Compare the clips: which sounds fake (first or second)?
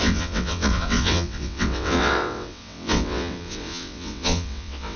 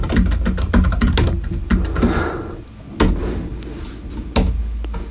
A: first